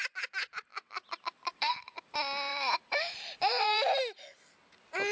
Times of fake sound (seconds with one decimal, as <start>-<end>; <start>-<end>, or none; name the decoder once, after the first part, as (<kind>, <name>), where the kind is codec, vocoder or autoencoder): 0.7-2.0 (vocoder, BigVGAN v2); 2.5-4.0